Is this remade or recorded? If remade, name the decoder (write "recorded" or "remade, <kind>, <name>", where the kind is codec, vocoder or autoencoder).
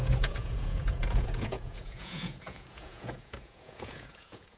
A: remade, vocoder, Vocos